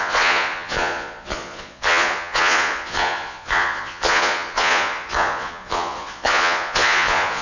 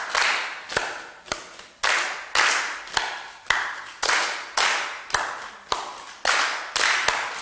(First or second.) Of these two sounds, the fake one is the first